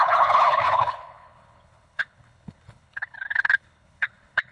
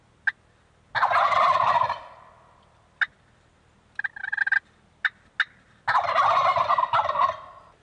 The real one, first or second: second